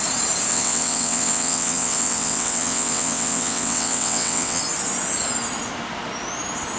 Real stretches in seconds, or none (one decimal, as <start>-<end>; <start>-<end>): 0.0-0.5; 4.6-6.8